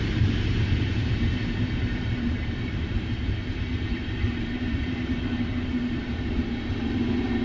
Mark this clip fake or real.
fake